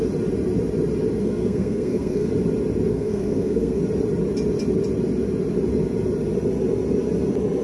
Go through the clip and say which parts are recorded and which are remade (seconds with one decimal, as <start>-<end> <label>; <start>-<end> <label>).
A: 0.0-1.2 recorded; 1.2-2.3 remade; 2.3-2.9 recorded; 2.9-3.8 remade; 3.8-7.6 recorded

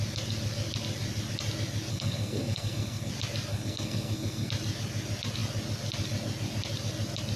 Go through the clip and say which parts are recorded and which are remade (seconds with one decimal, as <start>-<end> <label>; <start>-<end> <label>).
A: 0.0-1.9 recorded; 1.9-3.1 remade; 3.1-3.5 recorded; 3.5-4.5 remade; 4.5-7.4 recorded

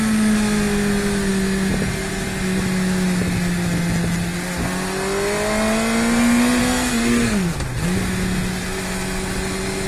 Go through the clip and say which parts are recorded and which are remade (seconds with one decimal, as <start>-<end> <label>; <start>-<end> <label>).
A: 0.0-6.6 recorded; 6.6-7.5 remade; 7.5-9.9 recorded